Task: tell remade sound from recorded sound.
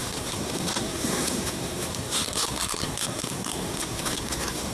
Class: remade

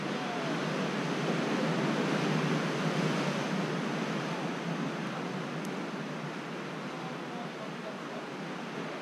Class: recorded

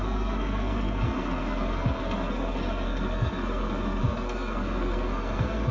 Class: remade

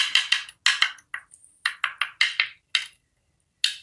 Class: recorded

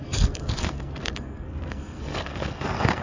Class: remade